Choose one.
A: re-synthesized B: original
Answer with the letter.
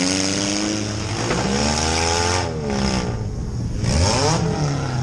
B